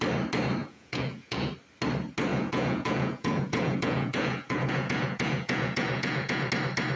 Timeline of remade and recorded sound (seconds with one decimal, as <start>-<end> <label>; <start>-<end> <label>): 0.0-0.6 recorded; 0.6-1.5 remade; 1.5-2.3 recorded; 2.3-6.5 remade; 6.5-7.0 recorded